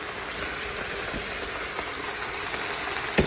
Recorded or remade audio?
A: recorded